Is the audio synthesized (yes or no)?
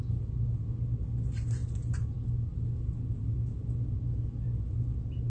no